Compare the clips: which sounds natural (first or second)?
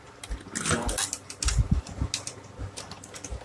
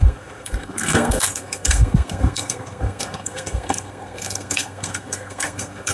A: first